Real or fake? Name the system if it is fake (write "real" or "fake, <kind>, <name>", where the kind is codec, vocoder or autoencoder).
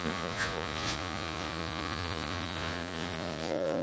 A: fake, vocoder, Vocos